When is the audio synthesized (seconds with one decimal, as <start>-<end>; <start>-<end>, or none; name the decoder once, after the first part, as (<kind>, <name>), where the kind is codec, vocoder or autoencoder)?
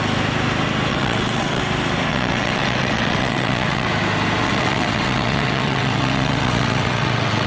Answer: 0.9-1.6 (vocoder, WaveNeXt); 2.1-3.9; 4.4-7.5